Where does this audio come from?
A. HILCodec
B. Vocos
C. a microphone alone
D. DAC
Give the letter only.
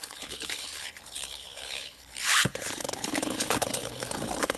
A